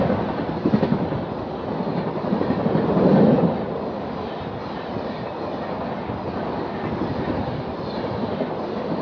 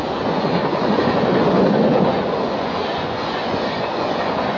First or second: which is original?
first